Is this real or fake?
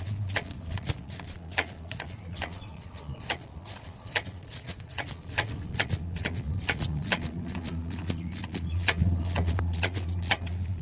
fake